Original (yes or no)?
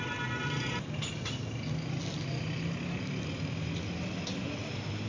yes